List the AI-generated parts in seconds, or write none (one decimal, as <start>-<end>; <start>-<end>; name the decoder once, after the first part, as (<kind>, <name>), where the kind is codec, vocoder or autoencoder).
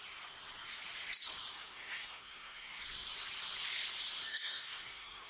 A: 1.5-2.8 (codec, SNAC); 4.3-5.3